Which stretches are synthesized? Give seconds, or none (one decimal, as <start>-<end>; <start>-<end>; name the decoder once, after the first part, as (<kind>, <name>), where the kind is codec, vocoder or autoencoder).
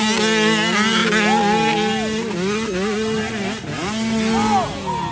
none